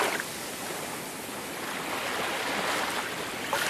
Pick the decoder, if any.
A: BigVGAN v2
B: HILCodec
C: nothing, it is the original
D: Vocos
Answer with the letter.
C